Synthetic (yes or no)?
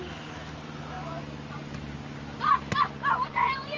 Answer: no